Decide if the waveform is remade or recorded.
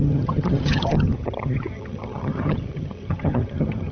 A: remade